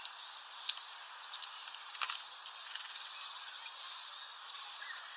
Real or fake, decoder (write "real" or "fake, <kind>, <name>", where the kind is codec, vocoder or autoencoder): real